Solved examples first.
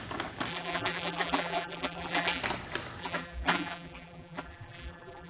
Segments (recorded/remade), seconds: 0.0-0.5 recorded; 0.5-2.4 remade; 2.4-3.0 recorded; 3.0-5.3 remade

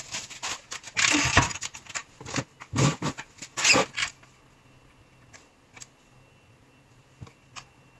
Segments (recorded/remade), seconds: 0.0-8.0 recorded

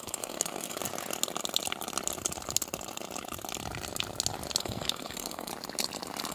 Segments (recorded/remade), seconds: 0.0-0.8 remade; 0.8-4.6 recorded; 4.6-5.5 remade; 5.5-6.3 recorded

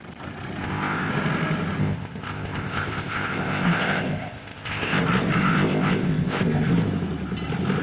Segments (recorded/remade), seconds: 0.0-0.6 recorded; 0.6-1.1 remade; 1.1-1.8 recorded; 1.8-5.0 remade; 5.0-5.4 recorded; 5.4-6.7 remade; 6.7-7.8 recorded

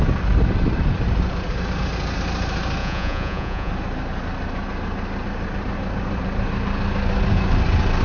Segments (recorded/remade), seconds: 0.0-2.8 recorded; 2.8-3.7 remade; 3.7-8.0 recorded

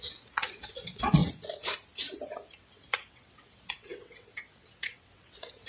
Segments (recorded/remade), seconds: 0.0-1.2 remade; 1.2-2.6 recorded; 2.6-5.7 remade